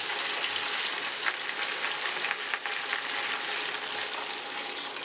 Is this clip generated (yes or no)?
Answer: no